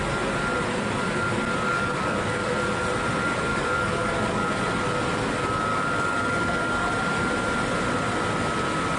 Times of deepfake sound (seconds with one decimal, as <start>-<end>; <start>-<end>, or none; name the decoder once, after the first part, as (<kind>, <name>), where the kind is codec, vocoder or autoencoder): 1.7-2.5 (codec, DAC); 3.5-4.5; 5.7-6.9